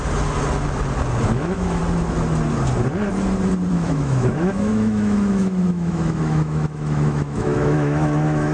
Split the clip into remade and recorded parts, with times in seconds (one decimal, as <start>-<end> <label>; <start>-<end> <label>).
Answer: 0.0-1.3 recorded; 1.3-1.8 remade; 1.8-3.7 recorded; 3.7-8.5 remade